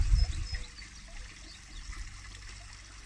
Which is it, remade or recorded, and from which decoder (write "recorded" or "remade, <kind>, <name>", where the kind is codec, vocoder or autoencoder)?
recorded